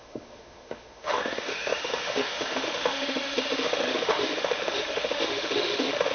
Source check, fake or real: fake